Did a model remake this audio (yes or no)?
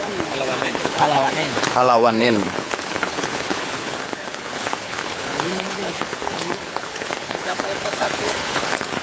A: yes